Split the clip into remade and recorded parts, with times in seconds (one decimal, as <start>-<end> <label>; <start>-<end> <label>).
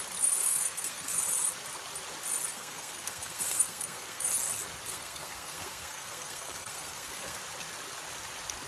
0.0-0.4 recorded; 0.4-1.2 remade; 1.2-2.5 recorded; 2.5-4.3 remade; 4.3-4.9 recorded; 4.9-7.4 remade; 7.4-8.7 recorded